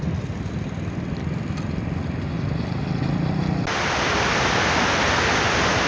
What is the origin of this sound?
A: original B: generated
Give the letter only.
A